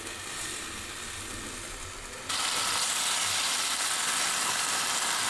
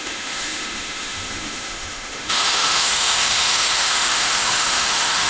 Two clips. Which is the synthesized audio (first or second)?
second